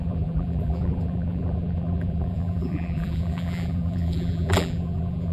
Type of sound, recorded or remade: remade